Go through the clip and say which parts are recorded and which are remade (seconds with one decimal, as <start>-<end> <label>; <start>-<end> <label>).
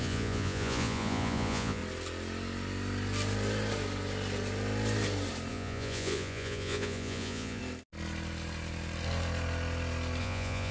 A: 0.0-1.8 remade; 1.8-5.5 recorded; 5.5-7.6 remade; 7.6-10.2 recorded; 10.2-10.7 remade